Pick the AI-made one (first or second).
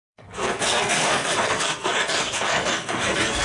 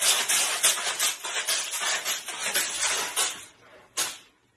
first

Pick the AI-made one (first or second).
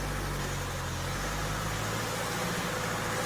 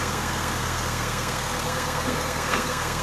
second